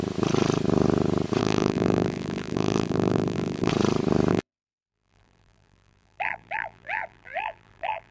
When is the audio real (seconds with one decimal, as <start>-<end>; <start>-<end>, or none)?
0.0-1.4; 3.7-4.3